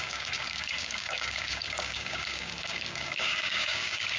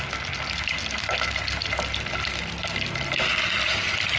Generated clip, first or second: first